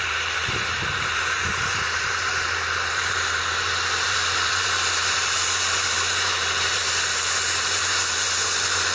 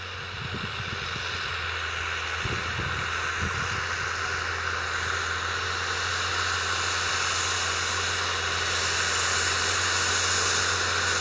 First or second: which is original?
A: second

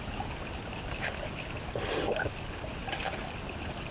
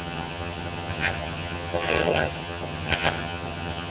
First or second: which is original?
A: first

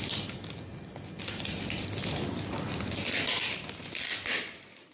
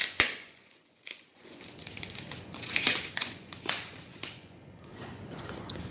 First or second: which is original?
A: first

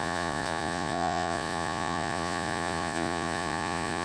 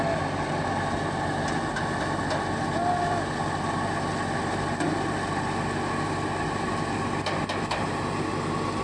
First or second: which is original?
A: second